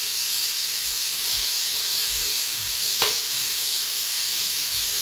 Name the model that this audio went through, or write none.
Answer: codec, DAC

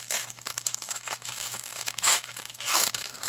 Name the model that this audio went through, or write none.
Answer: codec, DAC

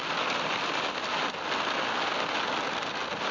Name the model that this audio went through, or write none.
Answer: none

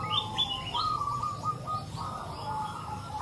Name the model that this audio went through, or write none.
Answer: none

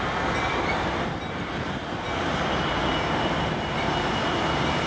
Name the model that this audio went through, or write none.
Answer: none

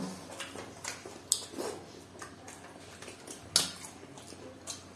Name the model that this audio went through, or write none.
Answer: none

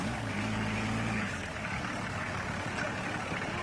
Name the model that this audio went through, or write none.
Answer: codec, DAC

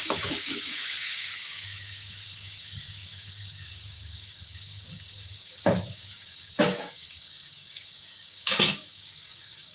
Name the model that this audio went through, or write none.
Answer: codec, DAC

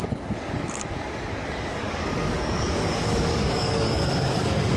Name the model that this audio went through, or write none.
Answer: codec, DAC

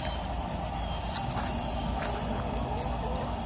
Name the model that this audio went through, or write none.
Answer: none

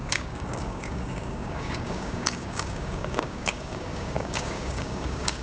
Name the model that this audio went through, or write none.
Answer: codec, DAC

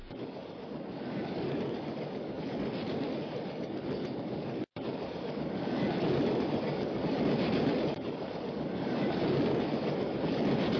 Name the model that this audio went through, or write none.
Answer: codec, DAC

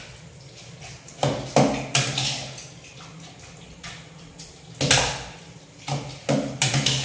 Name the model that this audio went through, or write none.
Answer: none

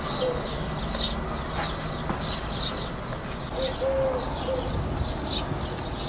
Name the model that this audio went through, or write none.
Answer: none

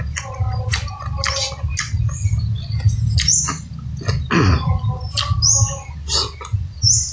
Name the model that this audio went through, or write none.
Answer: none